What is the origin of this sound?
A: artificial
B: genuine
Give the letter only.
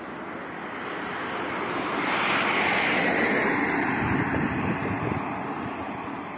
B